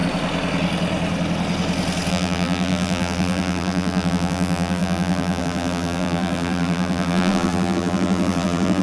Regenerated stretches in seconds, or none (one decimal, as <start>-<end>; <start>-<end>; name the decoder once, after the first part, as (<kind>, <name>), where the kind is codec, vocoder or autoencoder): 2.1-8.8 (vocoder, BigVGAN v2)